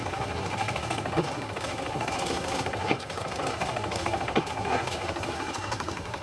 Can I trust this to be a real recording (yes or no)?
no